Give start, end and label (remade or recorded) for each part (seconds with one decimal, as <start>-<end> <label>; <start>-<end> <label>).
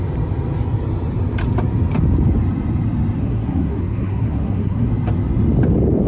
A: 0.0-3.2 recorded; 3.2-4.9 remade; 4.9-6.1 recorded